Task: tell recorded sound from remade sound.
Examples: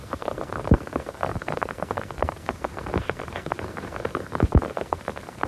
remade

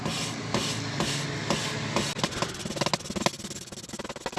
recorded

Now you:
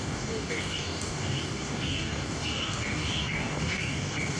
remade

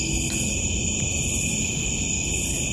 recorded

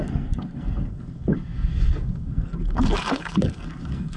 remade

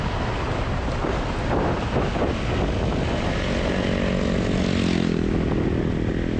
recorded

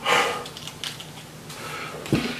recorded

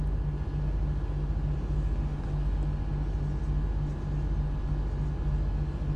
recorded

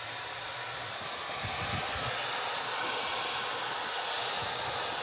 recorded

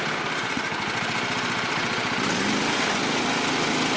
recorded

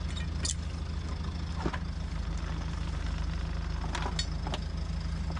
recorded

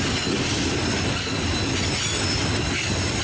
recorded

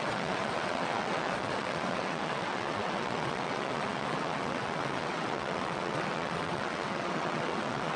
remade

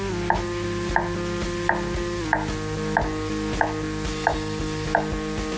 recorded